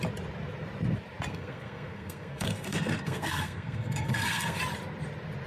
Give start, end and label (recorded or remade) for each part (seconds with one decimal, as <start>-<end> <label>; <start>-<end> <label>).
0.0-1.3 recorded; 1.3-4.6 remade; 4.6-5.5 recorded